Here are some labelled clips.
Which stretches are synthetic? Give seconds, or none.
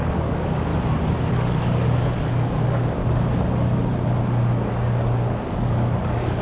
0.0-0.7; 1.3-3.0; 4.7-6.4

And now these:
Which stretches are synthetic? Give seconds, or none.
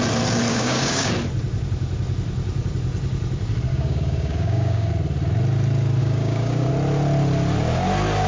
0.5-1.1; 3.7-4.9; 6.0-6.7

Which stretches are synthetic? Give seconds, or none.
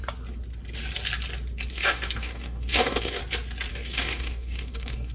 1.7-3.2; 3.7-5.1